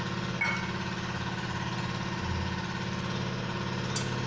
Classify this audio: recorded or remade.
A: recorded